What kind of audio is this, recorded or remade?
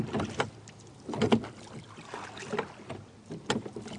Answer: recorded